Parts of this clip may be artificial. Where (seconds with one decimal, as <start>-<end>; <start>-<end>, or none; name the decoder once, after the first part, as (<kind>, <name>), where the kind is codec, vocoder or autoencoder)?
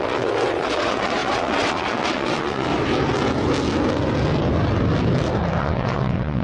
0.0-2.7 (vocoder, WaveNeXt); 5.6-6.4